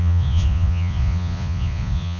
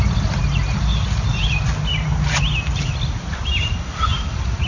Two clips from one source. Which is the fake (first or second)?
first